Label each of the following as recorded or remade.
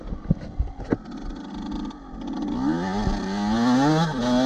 recorded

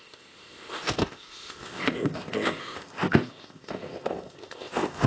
remade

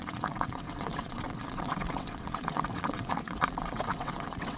remade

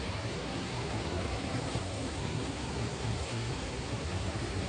remade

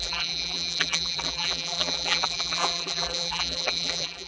remade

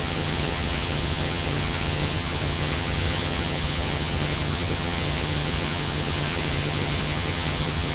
remade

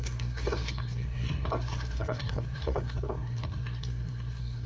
remade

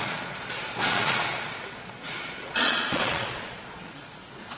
remade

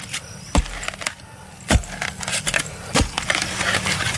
recorded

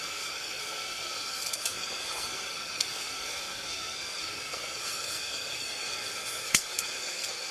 remade